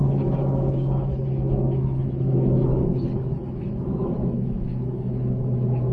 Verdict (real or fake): fake